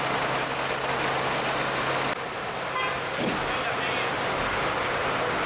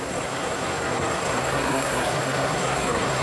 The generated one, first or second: second